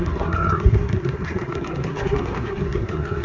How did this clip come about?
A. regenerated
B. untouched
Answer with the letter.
A